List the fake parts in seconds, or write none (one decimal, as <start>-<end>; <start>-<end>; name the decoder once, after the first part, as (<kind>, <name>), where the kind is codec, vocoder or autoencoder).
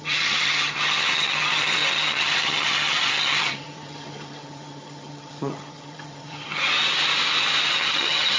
0.0-6.6 (vocoder, HiFi-GAN); 7.7-8.4